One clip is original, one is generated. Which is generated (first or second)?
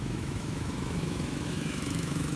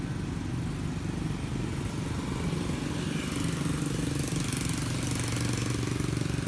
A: first